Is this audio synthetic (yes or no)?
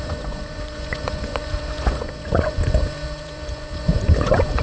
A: yes